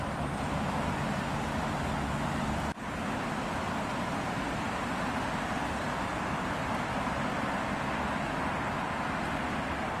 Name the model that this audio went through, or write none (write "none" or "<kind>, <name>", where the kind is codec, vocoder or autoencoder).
none